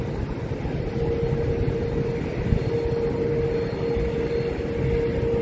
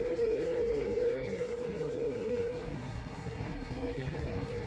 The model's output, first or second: second